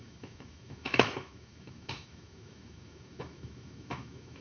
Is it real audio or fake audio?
fake